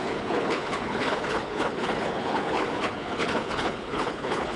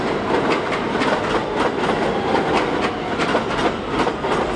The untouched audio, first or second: second